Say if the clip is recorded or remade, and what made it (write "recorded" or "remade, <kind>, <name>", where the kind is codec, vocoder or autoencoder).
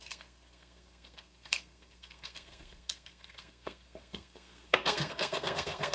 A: remade, codec, SNAC